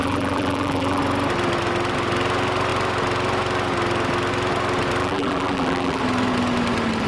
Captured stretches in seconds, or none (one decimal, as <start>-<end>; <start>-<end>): 1.0-5.0; 6.0-7.1